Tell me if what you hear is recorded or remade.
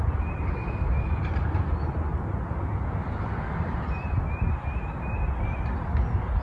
recorded